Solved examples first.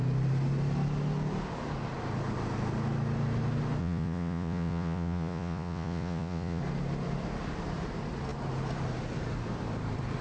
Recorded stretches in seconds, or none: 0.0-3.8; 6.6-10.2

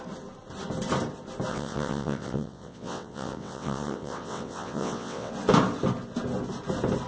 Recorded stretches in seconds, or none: 0.0-1.5; 5.3-7.1